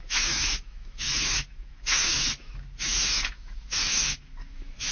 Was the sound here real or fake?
fake